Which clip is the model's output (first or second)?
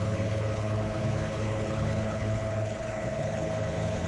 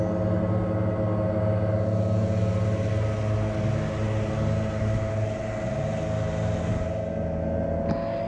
first